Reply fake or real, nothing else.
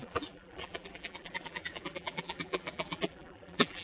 fake